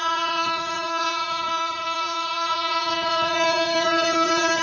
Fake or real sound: fake